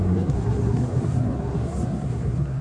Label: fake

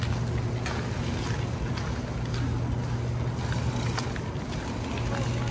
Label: real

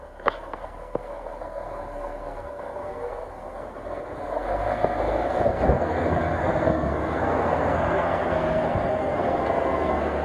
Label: fake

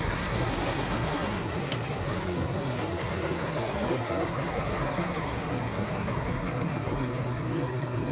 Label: fake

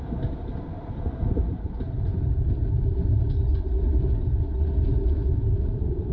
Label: real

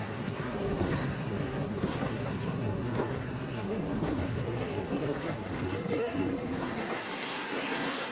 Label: fake